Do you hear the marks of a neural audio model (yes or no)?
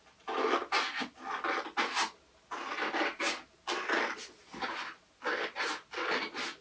no